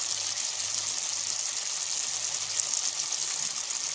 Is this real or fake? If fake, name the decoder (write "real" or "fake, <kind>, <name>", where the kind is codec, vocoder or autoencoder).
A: real